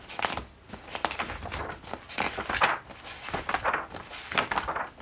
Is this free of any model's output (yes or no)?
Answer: yes